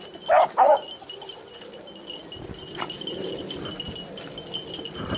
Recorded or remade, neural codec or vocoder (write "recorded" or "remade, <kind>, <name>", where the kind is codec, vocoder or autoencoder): recorded